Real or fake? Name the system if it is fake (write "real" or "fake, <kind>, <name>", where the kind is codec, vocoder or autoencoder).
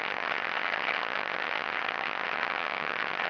fake, vocoder, HiFi-GAN